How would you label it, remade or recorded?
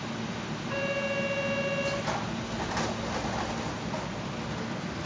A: recorded